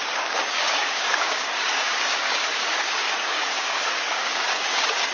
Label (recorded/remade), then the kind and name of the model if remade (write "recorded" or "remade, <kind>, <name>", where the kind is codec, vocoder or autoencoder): remade, codec, DAC